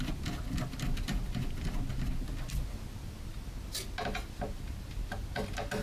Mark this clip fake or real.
real